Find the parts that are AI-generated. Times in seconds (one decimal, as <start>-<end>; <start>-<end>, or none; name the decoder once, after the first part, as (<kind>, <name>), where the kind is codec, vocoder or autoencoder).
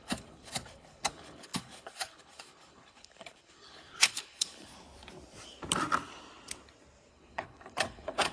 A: 0.0-4.7 (codec, HILCodec); 7.1-8.3